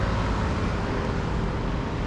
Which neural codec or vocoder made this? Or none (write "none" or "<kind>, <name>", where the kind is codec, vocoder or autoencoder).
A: none